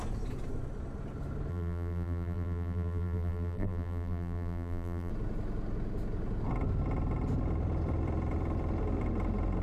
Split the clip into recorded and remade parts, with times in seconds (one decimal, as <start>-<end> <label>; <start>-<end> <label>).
0.0-1.5 recorded; 1.5-5.1 remade; 5.1-9.6 recorded